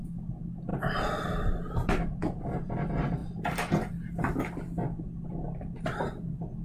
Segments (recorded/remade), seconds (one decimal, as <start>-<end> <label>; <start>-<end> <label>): 0.0-0.7 recorded; 0.7-2.4 remade; 2.4-3.2 recorded; 3.2-3.9 remade; 3.9-6.6 recorded